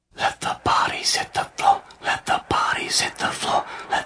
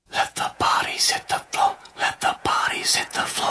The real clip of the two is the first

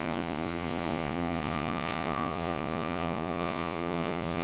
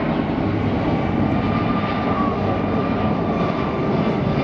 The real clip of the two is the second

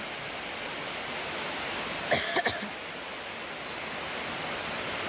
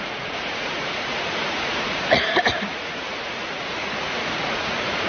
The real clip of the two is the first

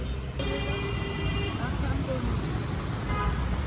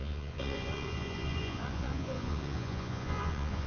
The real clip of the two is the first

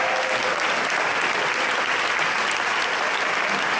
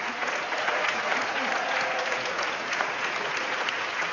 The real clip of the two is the first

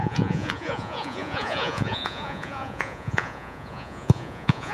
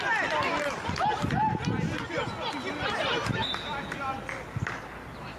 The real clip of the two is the second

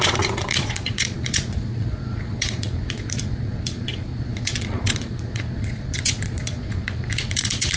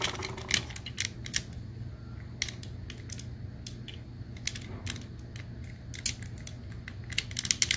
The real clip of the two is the second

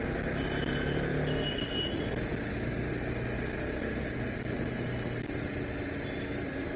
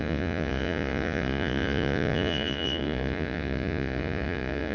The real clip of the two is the first